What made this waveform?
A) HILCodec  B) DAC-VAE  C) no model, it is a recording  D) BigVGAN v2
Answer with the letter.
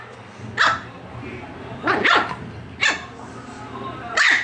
C